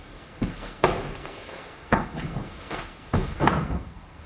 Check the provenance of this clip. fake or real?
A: fake